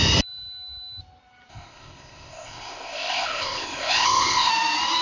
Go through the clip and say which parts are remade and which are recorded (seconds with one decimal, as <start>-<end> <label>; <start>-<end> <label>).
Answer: 0.0-1.5 recorded; 1.5-4.5 remade; 4.5-5.0 recorded